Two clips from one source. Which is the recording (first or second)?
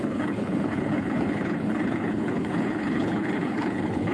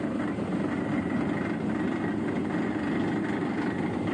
second